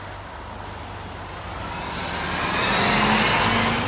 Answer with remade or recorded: recorded